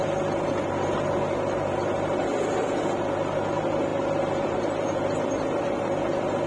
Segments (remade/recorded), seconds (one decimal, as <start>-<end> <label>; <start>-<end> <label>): 0.0-6.5 recorded